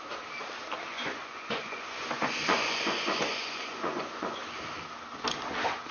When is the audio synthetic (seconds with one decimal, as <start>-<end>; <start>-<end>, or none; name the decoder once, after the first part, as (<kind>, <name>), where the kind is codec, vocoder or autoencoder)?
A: 0.9-4.4 (vocoder, Vocos)